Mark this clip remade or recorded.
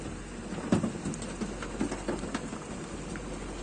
recorded